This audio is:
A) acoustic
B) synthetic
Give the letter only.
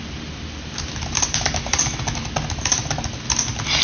A